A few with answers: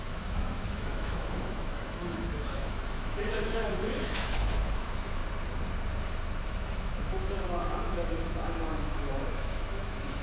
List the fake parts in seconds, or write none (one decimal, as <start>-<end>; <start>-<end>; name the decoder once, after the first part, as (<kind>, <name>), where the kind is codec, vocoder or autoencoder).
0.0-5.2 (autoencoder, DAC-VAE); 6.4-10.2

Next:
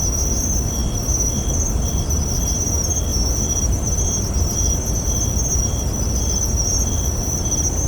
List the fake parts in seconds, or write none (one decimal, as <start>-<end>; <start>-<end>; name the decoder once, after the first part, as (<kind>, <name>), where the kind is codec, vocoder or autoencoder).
0.0-3.1 (vocoder, BigVGAN v2); 5.6-7.9

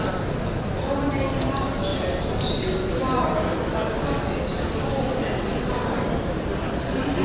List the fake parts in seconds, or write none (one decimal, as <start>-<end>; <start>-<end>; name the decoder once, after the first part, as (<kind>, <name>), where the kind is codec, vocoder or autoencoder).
none